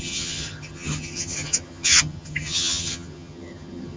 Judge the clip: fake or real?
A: fake